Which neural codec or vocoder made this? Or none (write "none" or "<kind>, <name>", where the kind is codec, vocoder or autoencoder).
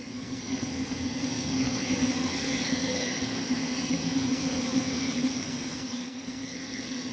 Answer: codec, SNAC